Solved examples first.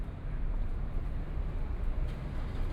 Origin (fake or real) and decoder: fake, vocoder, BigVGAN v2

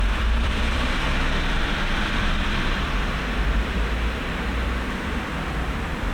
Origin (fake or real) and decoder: fake, vocoder, BigVGAN v2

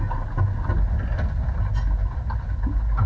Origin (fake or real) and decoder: real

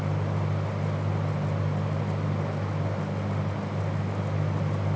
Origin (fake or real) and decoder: real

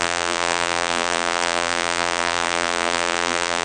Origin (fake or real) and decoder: fake, vocoder, BigVGAN v2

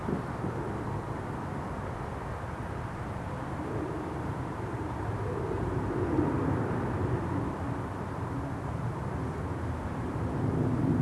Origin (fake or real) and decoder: fake, vocoder, BigVGAN v2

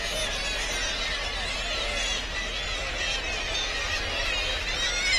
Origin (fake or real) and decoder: real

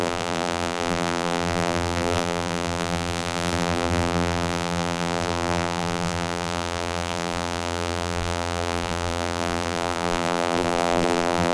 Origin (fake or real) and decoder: fake, vocoder, BigVGAN v2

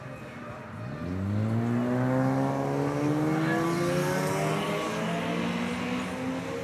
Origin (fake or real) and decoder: real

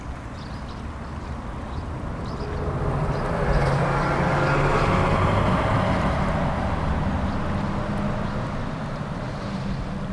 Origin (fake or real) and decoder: real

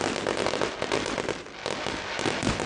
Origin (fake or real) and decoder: real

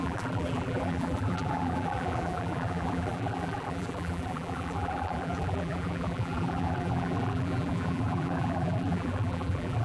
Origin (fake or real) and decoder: fake, vocoder, BigVGAN v2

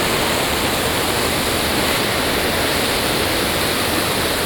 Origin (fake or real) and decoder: real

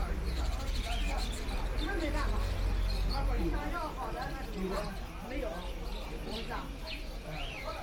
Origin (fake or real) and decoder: real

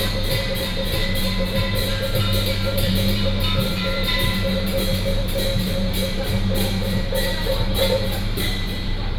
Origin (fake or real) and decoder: fake, vocoder, BigVGAN v2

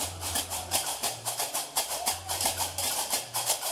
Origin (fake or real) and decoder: fake, vocoder, BigVGAN v2